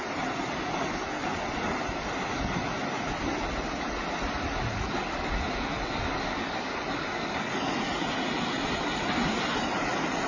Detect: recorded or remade recorded